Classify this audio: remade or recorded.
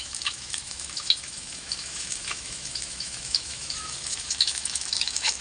remade